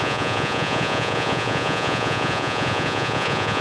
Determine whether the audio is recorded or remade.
remade